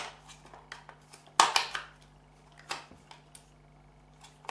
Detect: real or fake real